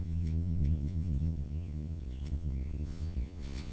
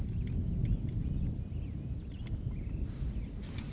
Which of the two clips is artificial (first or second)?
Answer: first